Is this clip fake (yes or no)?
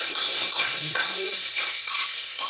yes